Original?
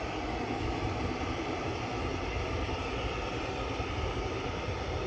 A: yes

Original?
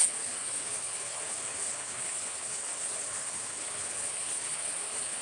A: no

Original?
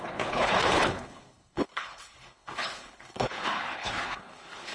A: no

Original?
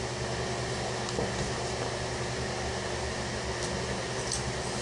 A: yes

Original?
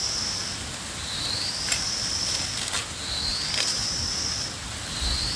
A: yes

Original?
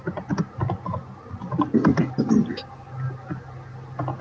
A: yes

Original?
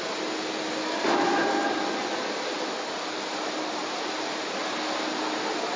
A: yes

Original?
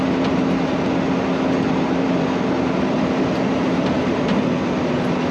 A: yes